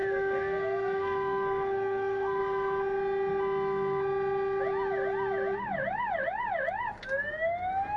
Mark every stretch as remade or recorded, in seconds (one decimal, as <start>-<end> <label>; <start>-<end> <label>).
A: 0.0-2.4 remade; 2.4-8.0 recorded